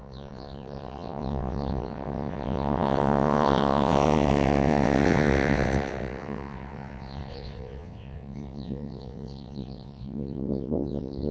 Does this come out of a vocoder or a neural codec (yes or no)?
yes